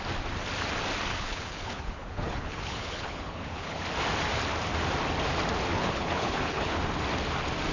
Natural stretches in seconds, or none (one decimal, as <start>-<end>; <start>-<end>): 0.0-1.1; 3.8-5.7; 6.8-7.7